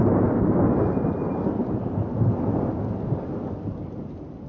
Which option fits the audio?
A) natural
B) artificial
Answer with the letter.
A